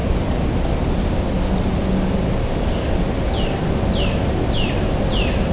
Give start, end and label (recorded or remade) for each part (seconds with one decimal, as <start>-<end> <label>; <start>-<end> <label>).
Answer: 0.0-2.4 recorded; 2.4-3.1 remade; 3.1-5.5 recorded